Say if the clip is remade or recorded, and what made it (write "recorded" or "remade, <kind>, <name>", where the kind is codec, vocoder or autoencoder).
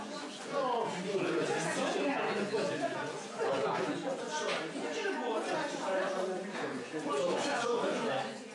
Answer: remade, vocoder, Vocos